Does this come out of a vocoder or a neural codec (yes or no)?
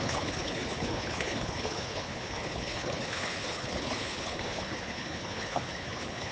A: yes